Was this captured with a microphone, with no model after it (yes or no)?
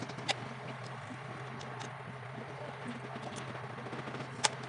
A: yes